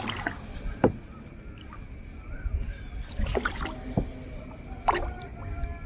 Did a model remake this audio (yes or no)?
no